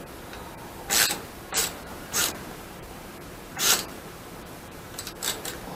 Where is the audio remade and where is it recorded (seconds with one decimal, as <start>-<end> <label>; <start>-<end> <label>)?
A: 0.0-1.6 recorded; 1.6-5.1 remade; 5.1-5.8 recorded